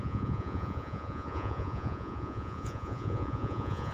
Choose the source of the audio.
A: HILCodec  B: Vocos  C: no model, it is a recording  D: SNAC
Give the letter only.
B